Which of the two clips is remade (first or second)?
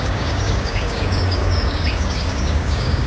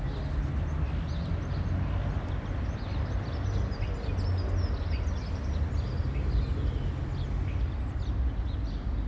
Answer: first